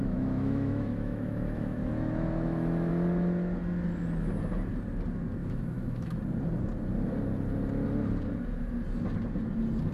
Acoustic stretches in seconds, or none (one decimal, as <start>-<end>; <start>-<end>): 2.9-5.4; 6.2-9.9